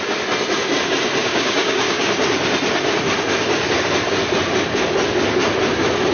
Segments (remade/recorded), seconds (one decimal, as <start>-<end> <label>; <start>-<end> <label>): 0.0-1.2 recorded; 1.2-2.1 remade; 2.1-6.1 recorded